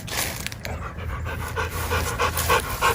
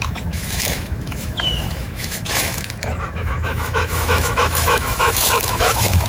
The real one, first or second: first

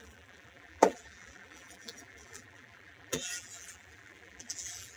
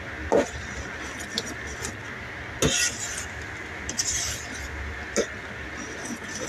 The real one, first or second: second